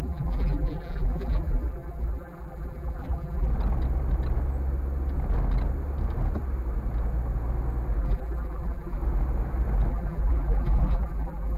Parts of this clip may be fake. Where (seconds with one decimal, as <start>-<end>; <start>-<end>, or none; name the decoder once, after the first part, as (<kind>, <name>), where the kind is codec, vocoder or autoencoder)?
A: 0.0-3.5 (vocoder, BigVGAN v2); 8.0-9.0; 9.9-11.6